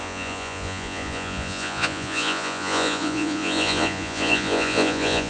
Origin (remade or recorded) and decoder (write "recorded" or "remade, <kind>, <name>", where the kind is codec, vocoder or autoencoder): remade, vocoder, Vocos